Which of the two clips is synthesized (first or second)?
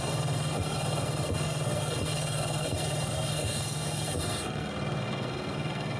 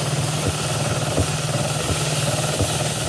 first